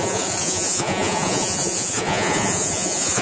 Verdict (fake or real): fake